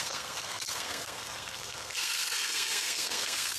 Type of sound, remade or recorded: remade